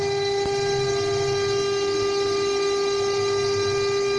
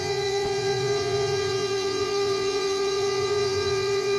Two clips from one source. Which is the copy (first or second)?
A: second